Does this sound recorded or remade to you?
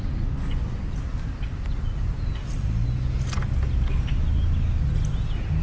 recorded